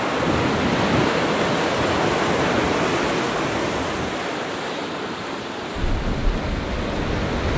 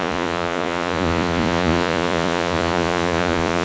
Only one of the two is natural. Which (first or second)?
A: first